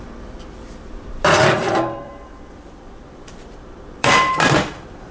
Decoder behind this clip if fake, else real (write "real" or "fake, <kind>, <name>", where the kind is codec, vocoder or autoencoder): fake, vocoder, BigVGAN v2